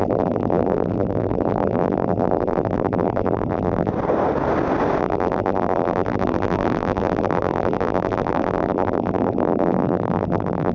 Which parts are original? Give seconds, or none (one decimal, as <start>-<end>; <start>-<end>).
3.9-5.0